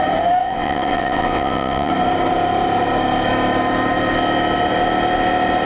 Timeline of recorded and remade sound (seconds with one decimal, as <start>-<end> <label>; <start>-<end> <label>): 0.0-0.4 recorded; 0.4-1.9 remade; 1.9-5.7 recorded